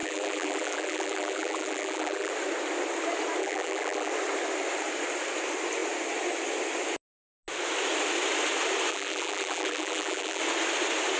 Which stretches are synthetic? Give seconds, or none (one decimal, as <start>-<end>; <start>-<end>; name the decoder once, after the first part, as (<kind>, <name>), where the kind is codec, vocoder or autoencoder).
0.0-2.3 (vocoder, BigVGAN v2); 3.4-4.1; 8.9-10.4